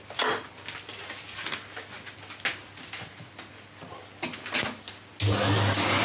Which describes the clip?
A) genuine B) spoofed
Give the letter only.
A